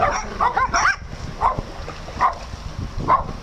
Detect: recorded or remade recorded